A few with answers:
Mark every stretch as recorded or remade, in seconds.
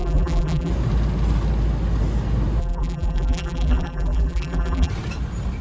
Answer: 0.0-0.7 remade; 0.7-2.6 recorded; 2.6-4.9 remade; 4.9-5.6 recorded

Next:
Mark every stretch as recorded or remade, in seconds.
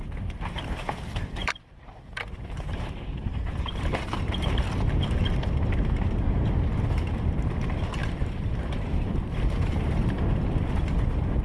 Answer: 0.0-1.4 recorded; 1.4-5.0 remade; 5.0-8.0 recorded; 8.0-10.2 remade; 10.2-11.4 recorded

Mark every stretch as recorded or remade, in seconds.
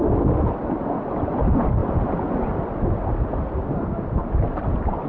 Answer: 0.0-5.1 recorded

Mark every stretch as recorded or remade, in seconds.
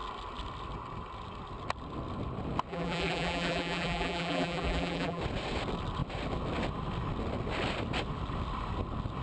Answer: 0.0-2.7 recorded; 2.7-5.2 remade; 5.2-9.2 recorded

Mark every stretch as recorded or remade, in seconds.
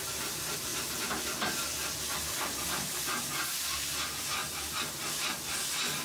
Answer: 0.0-0.7 recorded; 0.7-3.5 remade; 3.5-4.4 recorded; 4.4-5.2 remade; 5.2-6.0 recorded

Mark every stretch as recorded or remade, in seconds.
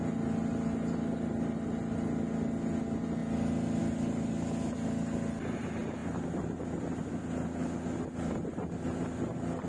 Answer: 0.0-9.7 recorded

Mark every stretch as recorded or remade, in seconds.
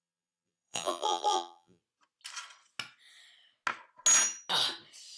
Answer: 0.0-1.8 remade; 1.8-5.2 recorded